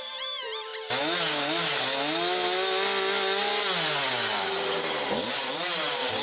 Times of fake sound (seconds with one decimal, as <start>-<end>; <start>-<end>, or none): 0.0-0.7; 4.4-6.2